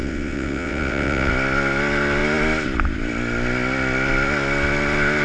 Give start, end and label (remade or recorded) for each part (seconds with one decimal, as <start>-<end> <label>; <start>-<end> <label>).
0.0-1.3 remade; 1.3-5.2 recorded